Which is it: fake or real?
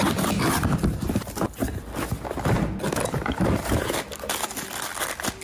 real